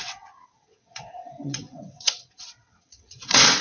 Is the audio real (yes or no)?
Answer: no